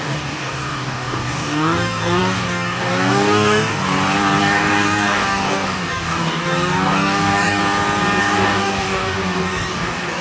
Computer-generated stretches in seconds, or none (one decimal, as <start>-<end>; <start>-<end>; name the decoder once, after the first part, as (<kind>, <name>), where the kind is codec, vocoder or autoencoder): 0.0-3.8 (codec, DAC); 4.4-7.6; 8.2-10.2

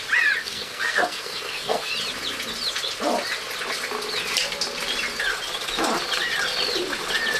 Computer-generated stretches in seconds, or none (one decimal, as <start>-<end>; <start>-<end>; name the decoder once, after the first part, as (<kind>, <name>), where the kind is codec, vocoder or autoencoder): 0.4-1.9 (codec, SNAC)

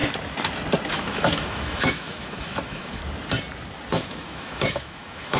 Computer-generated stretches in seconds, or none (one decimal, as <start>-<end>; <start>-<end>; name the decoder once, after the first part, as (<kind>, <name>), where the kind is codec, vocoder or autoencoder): 0.9-3.0 (autoencoder, DAC-VAE); 3.9-5.4

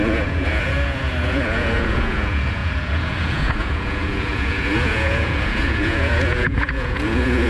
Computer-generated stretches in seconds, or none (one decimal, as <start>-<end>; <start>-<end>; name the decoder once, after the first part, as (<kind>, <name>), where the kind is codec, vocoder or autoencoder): 0.0-7.5 (vocoder, Vocos)